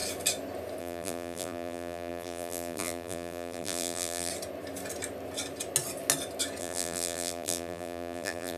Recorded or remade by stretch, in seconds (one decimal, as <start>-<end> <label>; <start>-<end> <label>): 0.0-0.8 recorded; 0.8-4.3 remade; 4.3-6.6 recorded; 6.6-8.6 remade